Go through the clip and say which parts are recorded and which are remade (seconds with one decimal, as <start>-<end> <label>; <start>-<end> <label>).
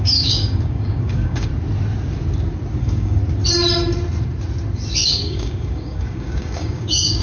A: 0.0-1.5 remade; 1.5-2.8 recorded; 2.8-3.2 remade; 3.2-4.9 recorded; 4.9-7.2 remade